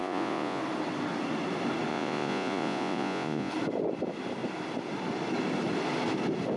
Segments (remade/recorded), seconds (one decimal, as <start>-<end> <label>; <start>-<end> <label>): 0.0-0.6 remade; 0.6-1.9 recorded; 1.9-3.5 remade; 3.5-6.6 recorded

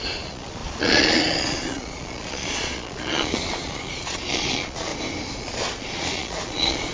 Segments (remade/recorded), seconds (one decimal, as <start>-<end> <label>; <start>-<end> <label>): 0.0-4.9 remade; 4.9-5.4 recorded; 5.4-6.9 remade

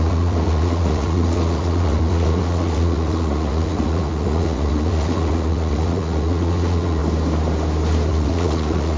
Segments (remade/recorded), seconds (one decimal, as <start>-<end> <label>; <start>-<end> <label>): 0.0-7.0 remade; 7.0-8.1 recorded; 8.1-9.0 remade

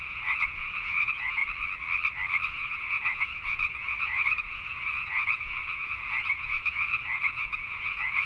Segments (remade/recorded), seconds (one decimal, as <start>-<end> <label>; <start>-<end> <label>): 0.0-1.4 remade; 1.4-2.5 recorded; 2.5-8.3 remade

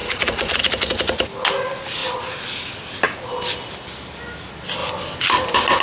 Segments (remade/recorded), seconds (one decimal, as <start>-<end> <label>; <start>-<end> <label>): 0.0-0.6 remade; 0.6-5.8 recorded

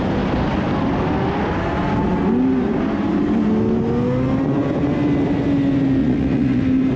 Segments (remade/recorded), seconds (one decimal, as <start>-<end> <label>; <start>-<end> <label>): 0.0-6.0 recorded; 6.0-6.6 remade; 6.6-7.0 recorded